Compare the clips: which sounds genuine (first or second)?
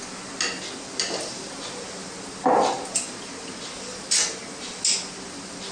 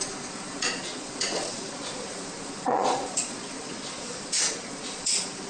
first